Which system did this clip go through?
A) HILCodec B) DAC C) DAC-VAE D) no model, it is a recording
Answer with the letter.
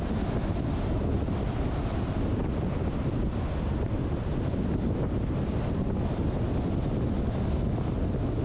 D